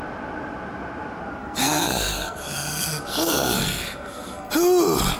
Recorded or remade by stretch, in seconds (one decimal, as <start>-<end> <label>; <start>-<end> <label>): 0.0-1.4 recorded; 1.4-4.5 remade; 4.5-5.2 recorded